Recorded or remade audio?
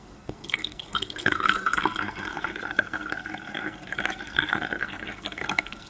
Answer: remade